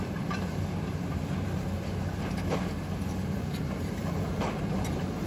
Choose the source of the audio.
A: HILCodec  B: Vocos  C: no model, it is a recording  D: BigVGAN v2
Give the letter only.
D